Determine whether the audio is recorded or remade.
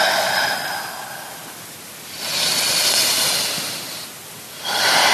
recorded